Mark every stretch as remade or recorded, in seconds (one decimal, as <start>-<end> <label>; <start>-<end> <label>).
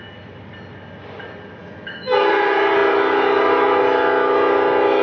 0.0-1.6 recorded; 1.6-2.3 remade; 2.3-5.0 recorded